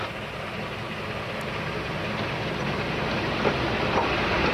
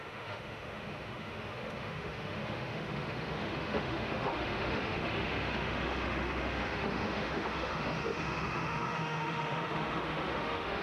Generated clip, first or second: second